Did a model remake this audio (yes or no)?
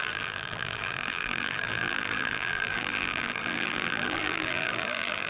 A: yes